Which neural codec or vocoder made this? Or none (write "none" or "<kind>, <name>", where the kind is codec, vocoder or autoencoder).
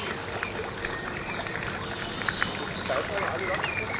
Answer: none